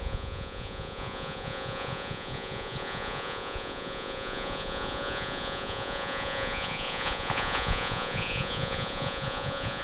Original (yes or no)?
no